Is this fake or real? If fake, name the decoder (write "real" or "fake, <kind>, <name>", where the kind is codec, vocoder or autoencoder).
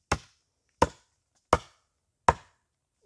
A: real